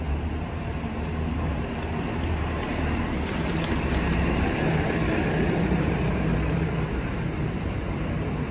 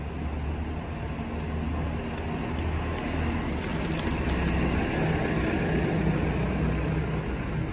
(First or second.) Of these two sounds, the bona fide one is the second